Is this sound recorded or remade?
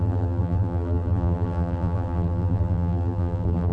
remade